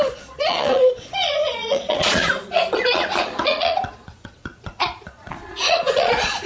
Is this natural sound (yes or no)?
no